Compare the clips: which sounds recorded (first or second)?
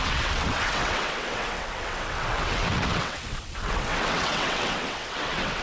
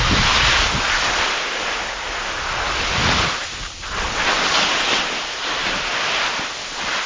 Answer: second